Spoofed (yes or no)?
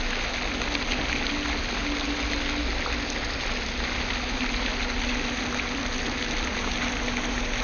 no